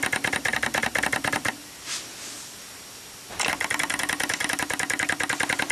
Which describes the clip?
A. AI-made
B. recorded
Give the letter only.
B